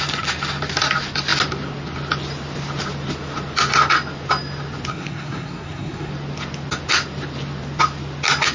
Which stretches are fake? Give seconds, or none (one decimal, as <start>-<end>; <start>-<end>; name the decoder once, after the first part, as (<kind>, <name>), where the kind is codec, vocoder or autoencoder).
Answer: 4.9-6.1 (codec, SNAC)